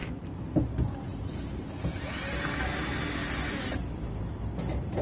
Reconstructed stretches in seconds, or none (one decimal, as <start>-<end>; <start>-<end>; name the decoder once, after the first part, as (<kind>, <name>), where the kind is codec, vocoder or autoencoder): none